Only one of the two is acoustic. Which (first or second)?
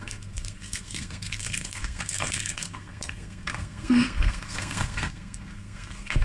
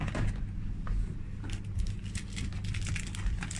second